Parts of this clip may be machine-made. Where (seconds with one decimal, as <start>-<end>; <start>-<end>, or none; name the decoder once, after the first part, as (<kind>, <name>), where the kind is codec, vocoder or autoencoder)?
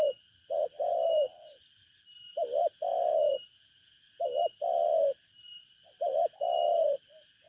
2.9-4.2 (vocoder, Vocos)